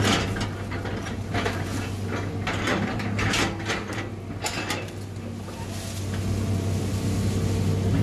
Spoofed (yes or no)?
no